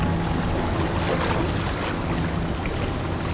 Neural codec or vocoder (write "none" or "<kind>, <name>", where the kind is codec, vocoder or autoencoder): none